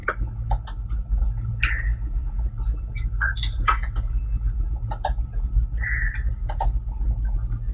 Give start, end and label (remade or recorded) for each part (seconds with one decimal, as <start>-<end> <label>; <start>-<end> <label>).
0.0-7.7 recorded